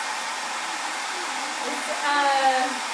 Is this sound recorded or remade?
recorded